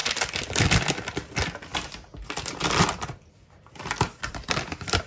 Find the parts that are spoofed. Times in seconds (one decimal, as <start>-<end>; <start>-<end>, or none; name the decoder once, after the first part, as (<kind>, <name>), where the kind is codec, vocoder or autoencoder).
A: none